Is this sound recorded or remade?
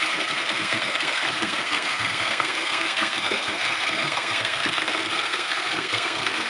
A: remade